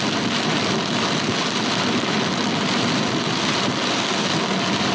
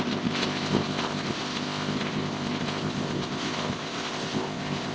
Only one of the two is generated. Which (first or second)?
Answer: second